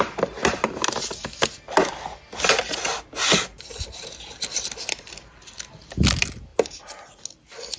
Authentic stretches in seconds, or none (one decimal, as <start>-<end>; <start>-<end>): 0.0-7.8